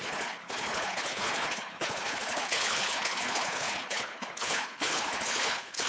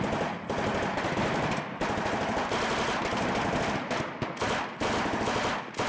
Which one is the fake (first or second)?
first